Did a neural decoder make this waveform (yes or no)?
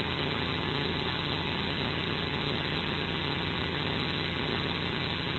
yes